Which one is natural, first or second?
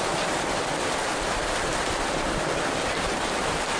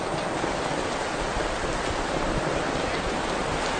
second